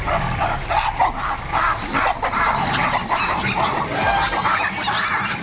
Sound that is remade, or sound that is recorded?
recorded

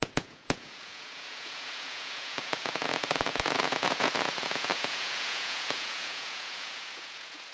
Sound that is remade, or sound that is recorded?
remade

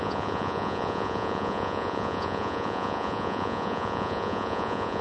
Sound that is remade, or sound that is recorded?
remade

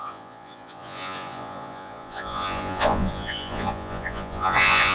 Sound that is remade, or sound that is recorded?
remade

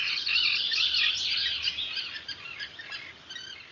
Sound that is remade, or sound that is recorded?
recorded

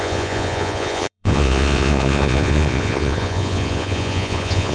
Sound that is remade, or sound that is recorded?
remade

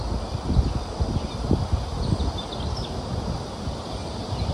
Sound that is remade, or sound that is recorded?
recorded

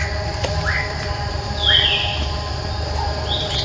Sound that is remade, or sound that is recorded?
recorded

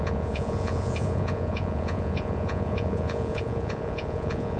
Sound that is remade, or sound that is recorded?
remade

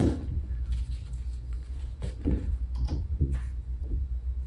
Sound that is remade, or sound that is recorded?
remade